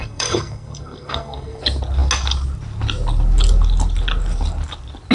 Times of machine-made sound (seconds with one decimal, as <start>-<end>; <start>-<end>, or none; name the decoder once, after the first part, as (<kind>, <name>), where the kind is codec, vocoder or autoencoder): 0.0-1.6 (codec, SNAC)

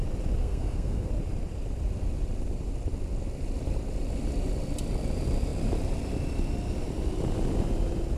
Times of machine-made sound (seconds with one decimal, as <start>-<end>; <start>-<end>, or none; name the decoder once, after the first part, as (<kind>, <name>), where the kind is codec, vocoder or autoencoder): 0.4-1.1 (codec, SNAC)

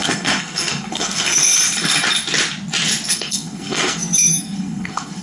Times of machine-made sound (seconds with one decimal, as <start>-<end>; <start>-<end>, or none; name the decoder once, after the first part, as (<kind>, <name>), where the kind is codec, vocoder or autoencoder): 0.0-1.5 (codec, SNAC); 3.1-5.2

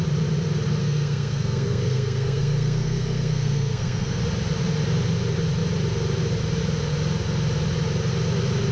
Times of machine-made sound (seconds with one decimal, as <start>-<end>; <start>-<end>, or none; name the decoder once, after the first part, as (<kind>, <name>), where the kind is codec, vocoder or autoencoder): 0.8-4.2 (codec, SNAC)

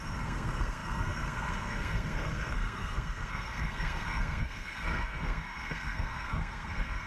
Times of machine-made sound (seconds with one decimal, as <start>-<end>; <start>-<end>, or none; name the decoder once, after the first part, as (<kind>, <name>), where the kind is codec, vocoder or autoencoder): 0.0-7.1 (codec, SNAC)

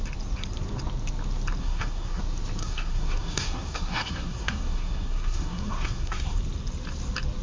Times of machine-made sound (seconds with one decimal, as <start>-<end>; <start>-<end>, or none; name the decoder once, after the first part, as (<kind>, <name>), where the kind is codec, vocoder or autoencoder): 1.6-2.2 (codec, SNAC); 2.6-6.4

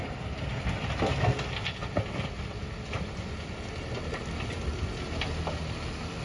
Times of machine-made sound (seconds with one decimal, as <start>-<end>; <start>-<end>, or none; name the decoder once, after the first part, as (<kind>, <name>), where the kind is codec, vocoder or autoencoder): none

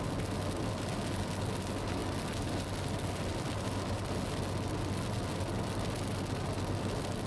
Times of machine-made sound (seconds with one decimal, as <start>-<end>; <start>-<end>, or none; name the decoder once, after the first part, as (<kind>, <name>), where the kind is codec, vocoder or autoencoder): none